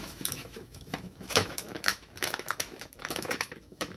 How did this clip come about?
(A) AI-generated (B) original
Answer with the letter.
A